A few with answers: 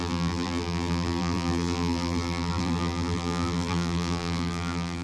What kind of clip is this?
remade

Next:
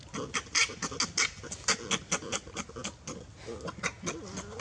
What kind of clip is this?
recorded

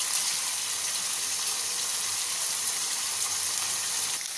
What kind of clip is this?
recorded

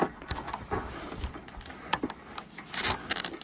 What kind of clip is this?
recorded